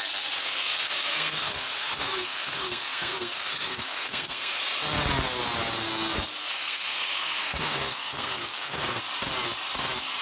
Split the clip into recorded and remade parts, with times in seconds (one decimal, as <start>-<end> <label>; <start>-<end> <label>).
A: 0.0-0.4 recorded; 0.4-4.6 remade; 4.6-6.4 recorded; 6.4-9.0 remade; 9.0-10.2 recorded